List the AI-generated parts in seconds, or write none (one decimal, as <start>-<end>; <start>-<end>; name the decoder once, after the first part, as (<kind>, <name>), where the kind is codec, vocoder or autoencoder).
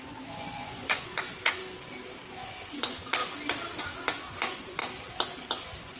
0.0-1.6 (vocoder, Vocos); 2.3-3.2; 3.8-4.8; 5.6-6.0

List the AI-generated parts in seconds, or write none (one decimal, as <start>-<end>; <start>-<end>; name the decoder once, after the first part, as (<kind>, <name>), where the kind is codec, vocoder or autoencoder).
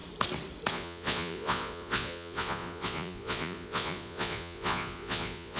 0.7-5.6 (vocoder, Vocos)